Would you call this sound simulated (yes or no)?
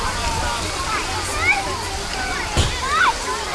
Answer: no